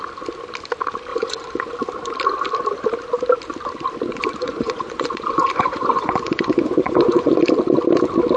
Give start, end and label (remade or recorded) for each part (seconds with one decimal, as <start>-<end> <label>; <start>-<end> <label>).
0.0-1.1 recorded; 1.1-1.7 remade; 1.7-4.1 recorded; 4.1-7.4 remade; 7.4-8.4 recorded